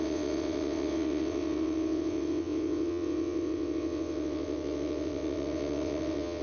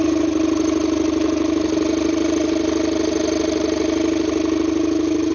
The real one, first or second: second